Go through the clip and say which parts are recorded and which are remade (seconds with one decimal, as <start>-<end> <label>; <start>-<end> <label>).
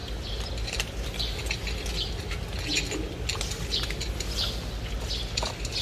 0.0-5.8 recorded